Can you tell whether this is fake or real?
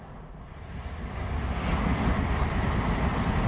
real